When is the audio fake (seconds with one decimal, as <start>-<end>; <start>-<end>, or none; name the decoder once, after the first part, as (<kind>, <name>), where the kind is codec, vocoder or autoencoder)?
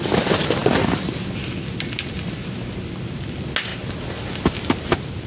0.6-1.2 (vocoder, BigVGAN v2)